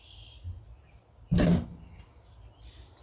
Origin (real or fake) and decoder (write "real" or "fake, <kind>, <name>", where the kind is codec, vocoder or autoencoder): real